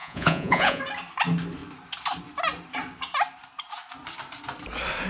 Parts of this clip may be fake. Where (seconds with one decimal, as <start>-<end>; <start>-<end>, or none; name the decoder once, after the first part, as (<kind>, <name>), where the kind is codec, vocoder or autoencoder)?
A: 0.0-0.8 (vocoder, Vocos)